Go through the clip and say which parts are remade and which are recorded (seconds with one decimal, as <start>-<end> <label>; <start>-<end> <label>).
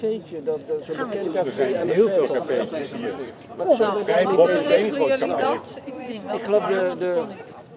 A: 0.0-1.2 recorded; 1.2-4.7 remade; 4.7-5.2 recorded; 5.2-6.8 remade; 6.8-7.8 recorded